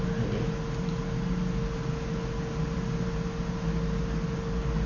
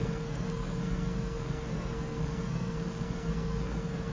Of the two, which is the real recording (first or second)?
first